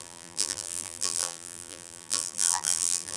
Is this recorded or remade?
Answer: remade